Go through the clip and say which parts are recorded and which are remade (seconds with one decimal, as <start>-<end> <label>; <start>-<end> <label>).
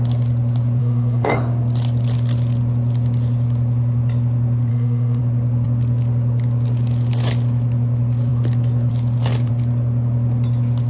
0.0-0.8 recorded; 0.8-1.3 remade; 1.3-4.7 recorded; 4.7-5.2 remade; 5.2-10.9 recorded